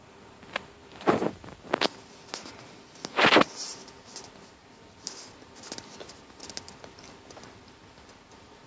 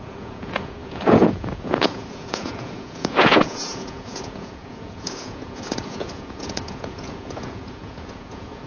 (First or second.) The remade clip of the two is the second